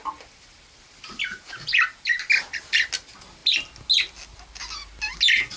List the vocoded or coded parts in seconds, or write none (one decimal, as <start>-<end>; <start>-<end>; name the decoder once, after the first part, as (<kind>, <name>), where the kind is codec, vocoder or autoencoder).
1.3-1.8 (vocoder, Vocos)